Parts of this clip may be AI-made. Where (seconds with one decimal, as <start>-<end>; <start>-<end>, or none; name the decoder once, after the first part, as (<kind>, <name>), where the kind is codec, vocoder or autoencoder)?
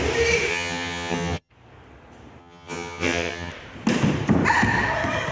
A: 0.5-1.5 (vocoder, HiFi-GAN); 2.4-3.5